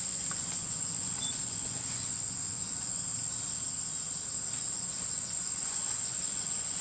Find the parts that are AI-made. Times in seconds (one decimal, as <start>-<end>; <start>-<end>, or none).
0.0-3.1; 4.6-6.8